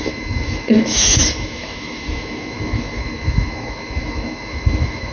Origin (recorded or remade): remade